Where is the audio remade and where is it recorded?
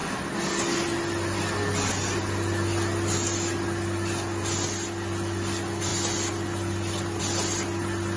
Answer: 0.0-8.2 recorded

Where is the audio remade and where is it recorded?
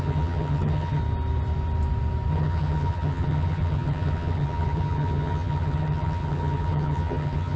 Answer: 0.0-1.0 remade; 1.0-2.3 recorded; 2.3-7.6 remade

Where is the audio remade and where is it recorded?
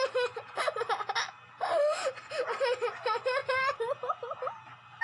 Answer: 0.0-3.4 recorded; 3.4-4.5 remade; 4.5-5.0 recorded